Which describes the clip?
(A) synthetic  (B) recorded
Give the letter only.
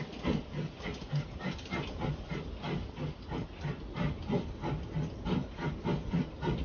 B